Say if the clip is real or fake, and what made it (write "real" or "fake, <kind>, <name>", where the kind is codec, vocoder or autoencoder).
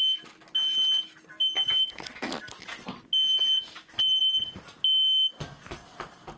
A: real